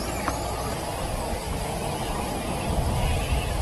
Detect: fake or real real